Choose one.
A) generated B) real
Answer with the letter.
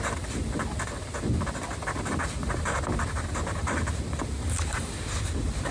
B